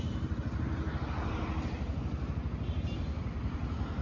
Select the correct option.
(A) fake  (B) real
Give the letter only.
B